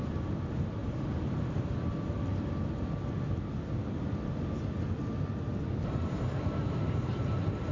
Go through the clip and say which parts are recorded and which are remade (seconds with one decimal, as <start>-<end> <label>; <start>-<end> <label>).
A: 0.0-0.8 recorded; 0.8-1.6 remade; 1.6-5.5 recorded; 5.5-7.7 remade